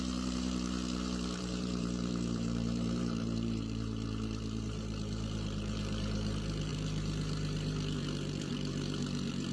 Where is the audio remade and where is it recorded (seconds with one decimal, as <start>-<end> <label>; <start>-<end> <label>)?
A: 0.0-9.5 remade